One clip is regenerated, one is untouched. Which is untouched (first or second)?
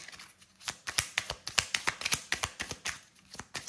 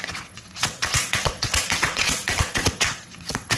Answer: first